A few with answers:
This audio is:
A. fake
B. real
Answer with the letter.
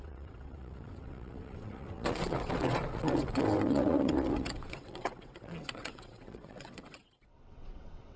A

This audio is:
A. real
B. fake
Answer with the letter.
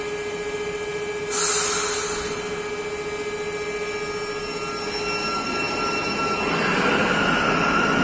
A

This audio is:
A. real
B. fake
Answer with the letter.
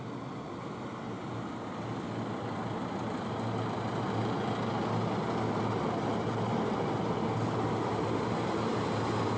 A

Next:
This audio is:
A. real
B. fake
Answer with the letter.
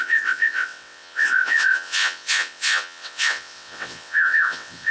B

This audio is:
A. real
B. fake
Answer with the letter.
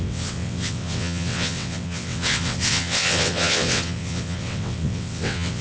B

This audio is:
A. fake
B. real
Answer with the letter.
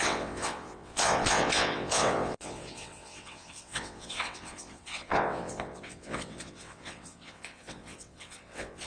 A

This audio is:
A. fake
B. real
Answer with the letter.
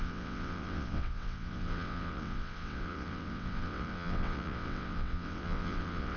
A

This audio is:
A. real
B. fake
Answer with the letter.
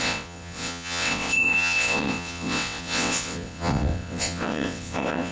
B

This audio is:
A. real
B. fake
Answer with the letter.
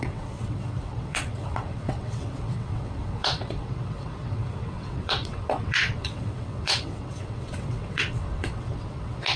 B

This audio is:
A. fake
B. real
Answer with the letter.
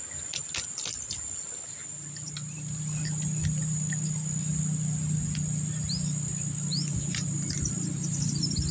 B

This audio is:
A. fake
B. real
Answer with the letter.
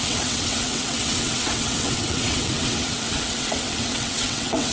A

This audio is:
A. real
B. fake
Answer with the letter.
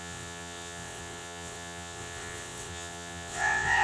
B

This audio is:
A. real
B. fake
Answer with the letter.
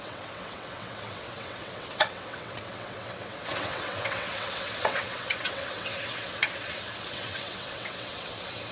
B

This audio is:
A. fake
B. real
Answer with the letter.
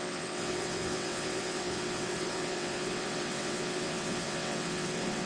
A